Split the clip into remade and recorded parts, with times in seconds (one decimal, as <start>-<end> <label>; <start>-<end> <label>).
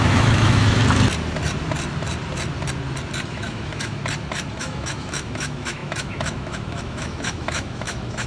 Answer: 0.0-0.8 remade; 0.8-3.3 recorded; 3.3-4.0 remade; 4.0-4.6 recorded; 4.6-8.3 remade